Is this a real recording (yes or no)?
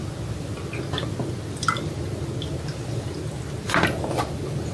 yes